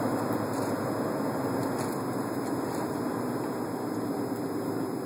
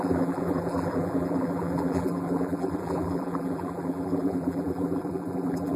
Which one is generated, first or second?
second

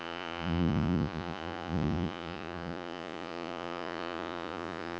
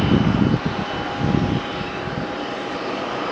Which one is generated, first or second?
first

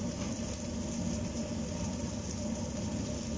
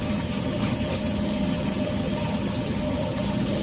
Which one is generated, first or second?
second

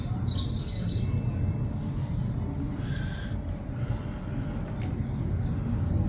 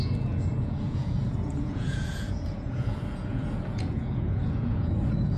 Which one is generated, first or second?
second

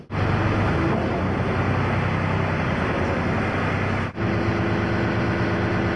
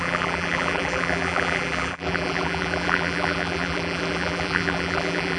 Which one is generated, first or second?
second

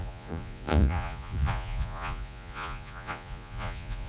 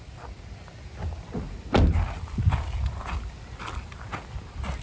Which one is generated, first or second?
first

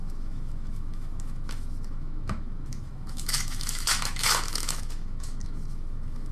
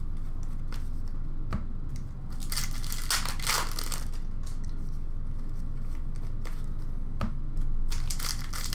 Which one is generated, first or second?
first